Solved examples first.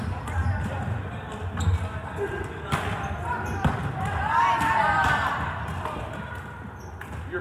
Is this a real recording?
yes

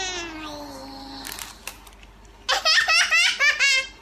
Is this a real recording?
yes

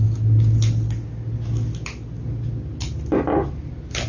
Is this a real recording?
yes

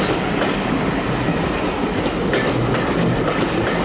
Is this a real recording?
yes